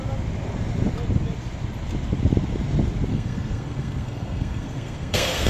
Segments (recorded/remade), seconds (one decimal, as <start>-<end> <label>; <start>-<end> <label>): 0.0-3.1 recorded; 3.1-5.5 remade